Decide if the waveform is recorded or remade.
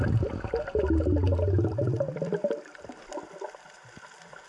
recorded